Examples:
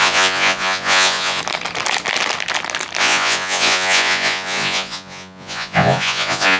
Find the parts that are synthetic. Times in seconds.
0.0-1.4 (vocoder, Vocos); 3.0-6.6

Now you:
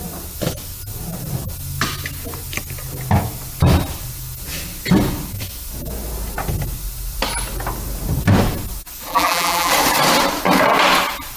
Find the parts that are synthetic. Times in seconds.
9.1-9.7 (vocoder, BigVGAN v2)

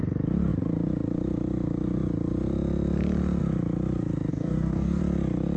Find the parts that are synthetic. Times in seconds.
4.3-5.0 (codec, DAC)

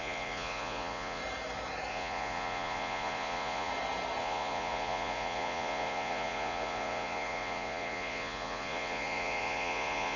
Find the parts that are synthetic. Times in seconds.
0.0-1.2 (vocoder, Vocos); 1.9-3.7; 4.2-10.2

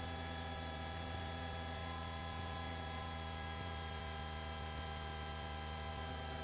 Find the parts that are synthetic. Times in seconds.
none

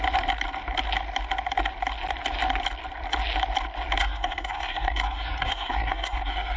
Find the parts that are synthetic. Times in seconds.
4.0-6.6 (codec, SNAC)

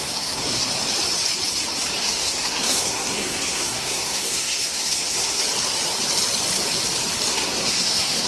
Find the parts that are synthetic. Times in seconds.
0.0-0.8 (codec, SNAC); 2.0-5.4; 7.3-8.3